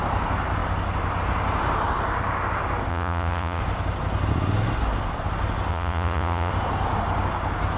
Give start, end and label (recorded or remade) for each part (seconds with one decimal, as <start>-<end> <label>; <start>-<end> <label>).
0.0-2.9 recorded; 2.9-3.6 remade; 3.6-5.7 recorded; 5.7-6.5 remade; 6.5-7.8 recorded